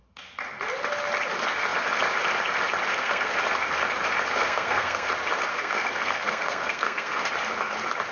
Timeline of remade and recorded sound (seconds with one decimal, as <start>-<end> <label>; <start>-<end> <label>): 0.0-2.9 recorded; 2.9-3.4 remade; 3.4-4.4 recorded; 4.4-5.1 remade; 5.1-5.5 recorded; 5.5-7.3 remade; 7.3-8.1 recorded